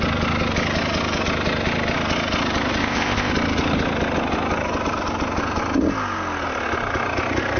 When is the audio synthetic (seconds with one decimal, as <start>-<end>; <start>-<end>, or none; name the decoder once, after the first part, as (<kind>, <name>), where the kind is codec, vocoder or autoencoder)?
2.8-3.3 (codec, ZipCodec)